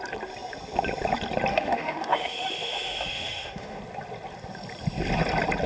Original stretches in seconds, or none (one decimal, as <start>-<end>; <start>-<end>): 0.0-1.5; 3.8-5.7